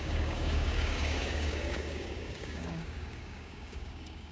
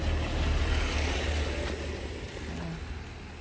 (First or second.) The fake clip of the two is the first